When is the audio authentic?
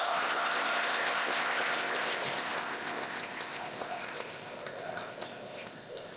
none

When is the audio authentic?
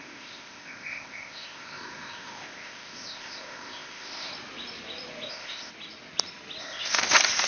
4.3-5.3; 5.7-6.6; 7.0-7.5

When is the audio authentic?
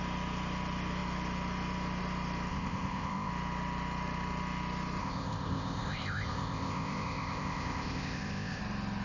0.0-2.5; 3.3-5.0; 8.6-9.0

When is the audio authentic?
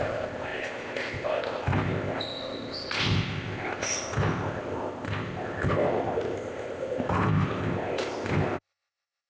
none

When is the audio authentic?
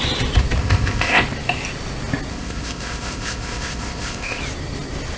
0.0-0.6; 1.2-2.3; 4.4-5.2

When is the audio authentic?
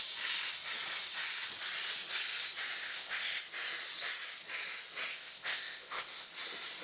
0.0-2.8; 3.4-5.1; 6.3-6.8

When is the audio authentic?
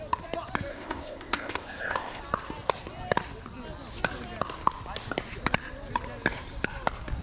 0.0-0.7; 2.2-7.2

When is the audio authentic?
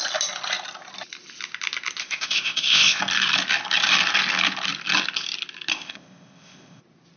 0.0-2.0; 3.0-5.7; 6.8-7.2